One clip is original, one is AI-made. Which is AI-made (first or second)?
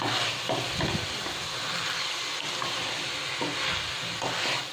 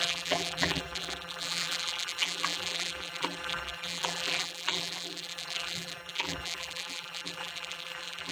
second